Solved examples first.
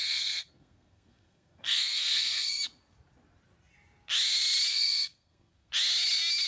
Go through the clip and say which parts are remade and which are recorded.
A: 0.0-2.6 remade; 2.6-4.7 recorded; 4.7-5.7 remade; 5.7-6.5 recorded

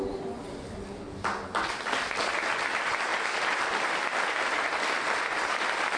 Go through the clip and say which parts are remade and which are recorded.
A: 0.0-6.0 recorded

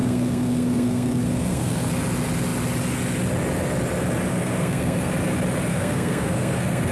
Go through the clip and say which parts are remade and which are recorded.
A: 0.0-1.9 remade; 1.9-4.3 recorded; 4.3-5.1 remade; 5.1-5.7 recorded; 5.7-6.9 remade

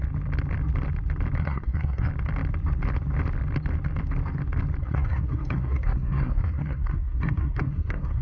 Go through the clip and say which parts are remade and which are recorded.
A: 0.0-1.4 recorded; 1.4-2.1 remade; 2.1-4.8 recorded; 4.8-8.2 remade

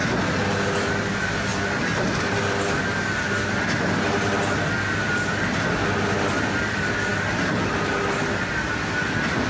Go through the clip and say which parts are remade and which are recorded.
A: 0.0-9.5 recorded

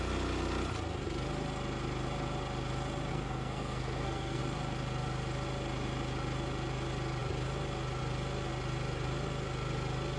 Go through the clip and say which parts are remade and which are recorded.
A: 0.0-3.1 recorded; 3.1-4.4 remade; 4.4-10.2 recorded

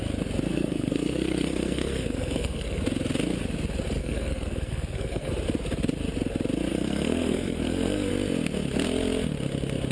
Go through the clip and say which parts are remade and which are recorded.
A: 0.0-0.5 recorded; 0.5-2.8 remade; 2.8-4.0 recorded; 4.0-5.3 remade; 5.3-6.7 recorded; 6.7-8.1 remade; 8.1-9.9 recorded